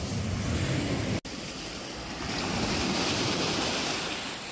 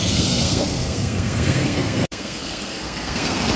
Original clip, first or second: first